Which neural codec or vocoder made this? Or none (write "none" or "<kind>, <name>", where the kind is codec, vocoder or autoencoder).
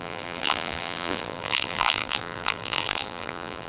vocoder, BigVGAN v2